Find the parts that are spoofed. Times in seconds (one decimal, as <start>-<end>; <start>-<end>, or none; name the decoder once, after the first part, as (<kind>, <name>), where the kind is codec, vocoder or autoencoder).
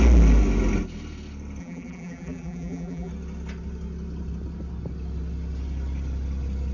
1.6-3.1 (vocoder, BigVGAN v2)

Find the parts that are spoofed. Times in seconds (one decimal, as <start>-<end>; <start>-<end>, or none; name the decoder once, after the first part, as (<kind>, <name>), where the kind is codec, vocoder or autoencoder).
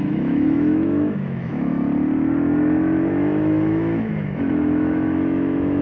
0.0-1.7 (autoencoder, DAC-VAE); 3.1-5.8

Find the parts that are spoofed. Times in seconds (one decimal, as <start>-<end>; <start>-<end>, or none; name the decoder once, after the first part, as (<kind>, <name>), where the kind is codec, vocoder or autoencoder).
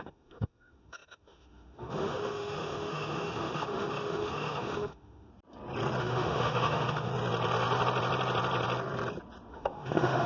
0.0-5.3 (autoencoder, DAC-VAE); 6.0-7.1; 9.5-10.3